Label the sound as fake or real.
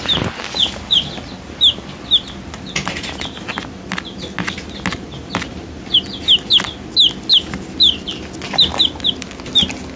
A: real